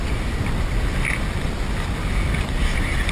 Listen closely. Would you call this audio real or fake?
real